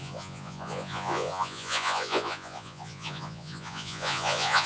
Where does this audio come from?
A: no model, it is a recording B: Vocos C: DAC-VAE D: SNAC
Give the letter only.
B